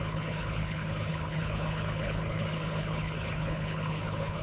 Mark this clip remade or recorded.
remade